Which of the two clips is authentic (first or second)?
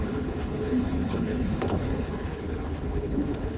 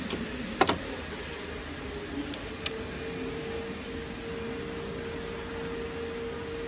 second